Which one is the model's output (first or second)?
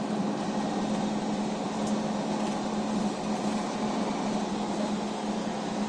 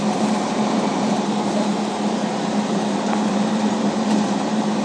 second